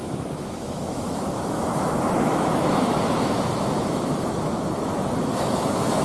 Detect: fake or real fake